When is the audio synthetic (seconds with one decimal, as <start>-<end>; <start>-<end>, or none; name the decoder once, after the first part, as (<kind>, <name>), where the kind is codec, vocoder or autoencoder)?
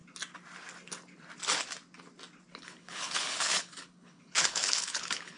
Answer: 2.5-5.4 (codec, HILCodec)